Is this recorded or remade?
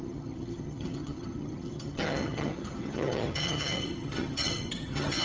remade